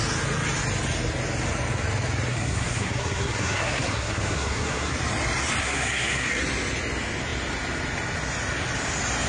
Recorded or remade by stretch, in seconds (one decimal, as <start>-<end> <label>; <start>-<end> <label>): 0.0-2.3 recorded; 2.3-4.9 remade; 4.9-5.6 recorded; 5.6-6.4 remade; 6.4-9.3 recorded

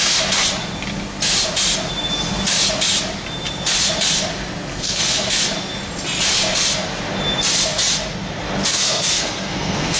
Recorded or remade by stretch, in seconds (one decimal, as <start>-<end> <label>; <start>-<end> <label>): 0.0-4.7 recorded; 4.7-5.4 remade; 5.4-8.7 recorded; 8.7-10.0 remade

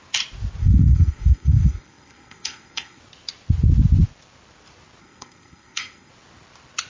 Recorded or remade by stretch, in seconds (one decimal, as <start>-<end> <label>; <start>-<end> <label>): 0.0-0.6 recorded; 0.6-3.0 remade; 3.0-5.0 recorded; 5.0-6.1 remade; 6.1-6.9 recorded

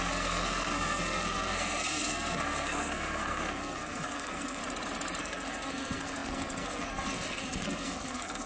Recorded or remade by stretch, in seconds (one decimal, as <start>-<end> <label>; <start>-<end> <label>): 0.0-4.6 remade; 4.6-5.2 recorded; 5.2-8.5 remade